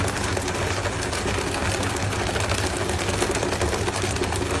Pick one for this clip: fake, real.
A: real